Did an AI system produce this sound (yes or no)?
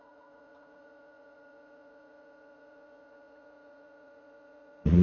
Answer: yes